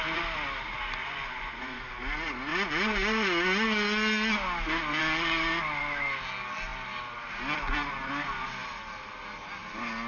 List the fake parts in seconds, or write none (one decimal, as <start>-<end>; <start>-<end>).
1.0-1.8